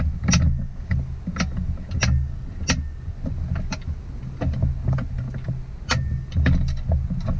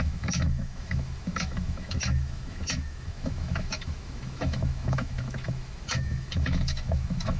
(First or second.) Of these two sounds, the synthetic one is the second